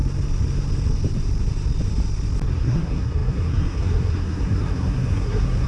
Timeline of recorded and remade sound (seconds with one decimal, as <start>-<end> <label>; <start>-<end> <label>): 0.0-2.6 recorded; 2.6-5.7 remade